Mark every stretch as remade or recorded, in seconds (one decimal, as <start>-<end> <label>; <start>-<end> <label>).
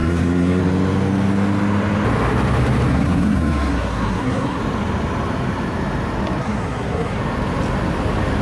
0.0-0.6 remade; 0.6-2.9 recorded; 2.9-4.6 remade; 4.6-6.4 recorded; 6.4-7.2 remade; 7.2-8.4 recorded